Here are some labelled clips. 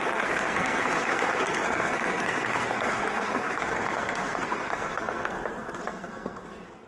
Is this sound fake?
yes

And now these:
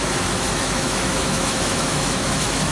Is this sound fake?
yes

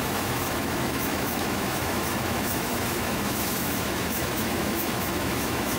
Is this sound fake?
yes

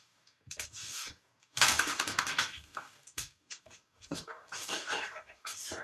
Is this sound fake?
yes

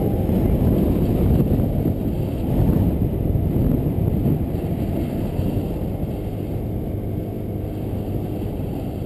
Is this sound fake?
no